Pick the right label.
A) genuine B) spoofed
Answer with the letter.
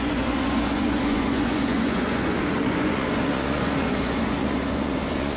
B